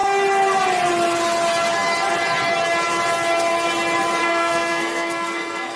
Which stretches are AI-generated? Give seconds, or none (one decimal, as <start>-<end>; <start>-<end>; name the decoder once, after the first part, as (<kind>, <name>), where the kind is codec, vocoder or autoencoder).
4.2-5.8 (codec, SNAC)